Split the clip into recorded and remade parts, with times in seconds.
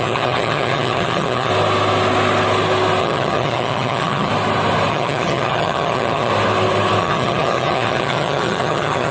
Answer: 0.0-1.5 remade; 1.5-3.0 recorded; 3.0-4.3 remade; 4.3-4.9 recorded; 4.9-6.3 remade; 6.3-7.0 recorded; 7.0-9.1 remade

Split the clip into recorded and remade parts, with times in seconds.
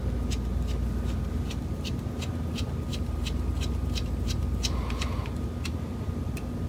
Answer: 0.0-2.9 recorded; 2.9-5.3 remade; 5.3-6.7 recorded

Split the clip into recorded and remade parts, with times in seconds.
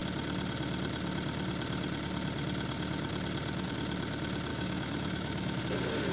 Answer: 0.0-4.5 recorded; 4.5-5.6 remade; 5.6-6.1 recorded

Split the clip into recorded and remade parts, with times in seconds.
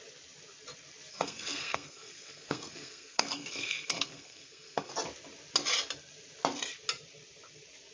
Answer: 0.0-1.1 recorded; 1.1-4.9 remade; 4.9-7.9 recorded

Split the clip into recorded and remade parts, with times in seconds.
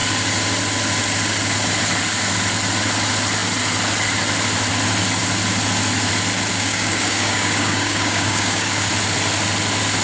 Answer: 0.0-6.5 recorded; 6.5-8.9 remade; 8.9-10.0 recorded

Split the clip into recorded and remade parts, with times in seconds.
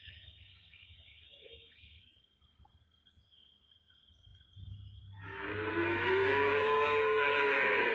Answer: 0.0-7.9 remade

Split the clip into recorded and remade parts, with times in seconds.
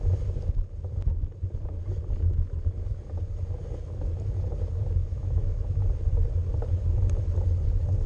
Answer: 0.0-5.0 recorded; 5.0-5.8 remade; 5.8-8.1 recorded